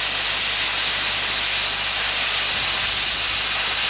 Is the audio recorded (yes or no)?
yes